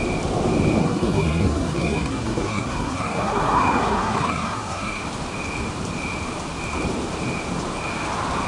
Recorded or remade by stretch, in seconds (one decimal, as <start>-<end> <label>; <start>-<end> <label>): 0.0-0.8 recorded; 0.8-5.0 remade; 5.0-8.5 recorded